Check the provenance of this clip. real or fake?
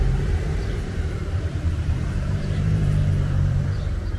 fake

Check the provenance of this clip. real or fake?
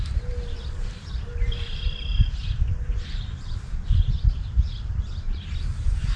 fake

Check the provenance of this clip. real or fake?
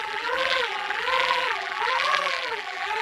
fake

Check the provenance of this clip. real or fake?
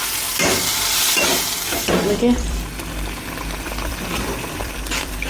fake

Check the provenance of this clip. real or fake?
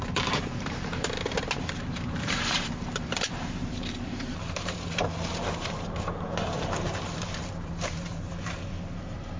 fake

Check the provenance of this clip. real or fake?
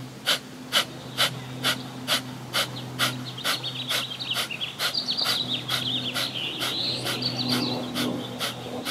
real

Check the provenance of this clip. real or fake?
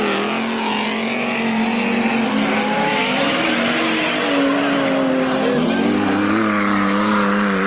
real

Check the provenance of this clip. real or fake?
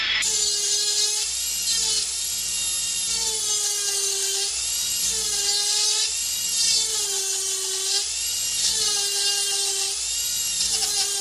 real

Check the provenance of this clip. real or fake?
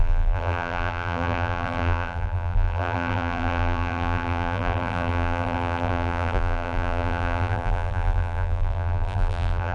fake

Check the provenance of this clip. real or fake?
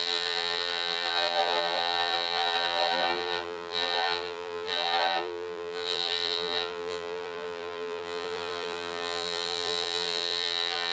fake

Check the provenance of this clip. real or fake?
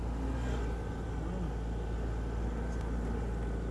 real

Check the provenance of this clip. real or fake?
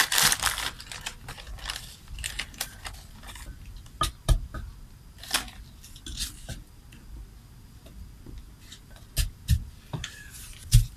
real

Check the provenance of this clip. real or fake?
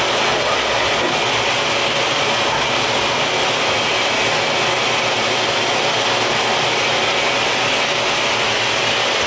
real